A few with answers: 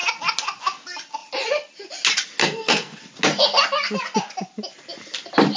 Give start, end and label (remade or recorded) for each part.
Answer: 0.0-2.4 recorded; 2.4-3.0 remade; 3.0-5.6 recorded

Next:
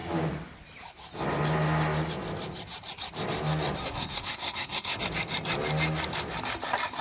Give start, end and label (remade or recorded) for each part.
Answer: 0.0-3.8 recorded; 3.8-5.0 remade; 5.0-7.0 recorded

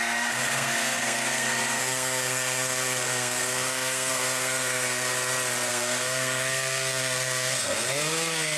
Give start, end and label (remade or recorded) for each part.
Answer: 0.0-5.1 remade; 5.1-5.7 recorded; 5.7-8.6 remade

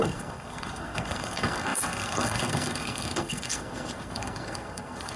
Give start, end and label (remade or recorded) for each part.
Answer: 0.0-5.2 remade

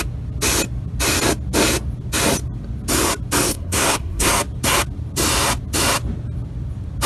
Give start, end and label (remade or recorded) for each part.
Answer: 0.0-3.5 recorded; 3.5-4.3 remade; 4.3-7.1 recorded

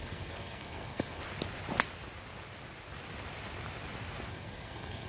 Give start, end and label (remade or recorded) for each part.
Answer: 0.0-1.2 remade; 1.2-4.3 recorded; 4.3-5.1 remade

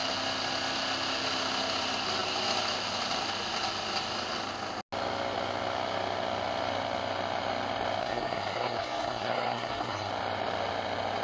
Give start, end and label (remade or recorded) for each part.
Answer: 0.0-8.0 recorded; 8.0-10.1 remade; 10.1-11.2 recorded